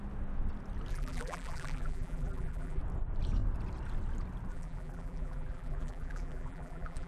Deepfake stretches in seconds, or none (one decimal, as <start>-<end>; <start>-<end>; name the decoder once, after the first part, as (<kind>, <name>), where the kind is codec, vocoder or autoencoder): 0.9-2.8 (vocoder, BigVGAN v2); 4.5-7.1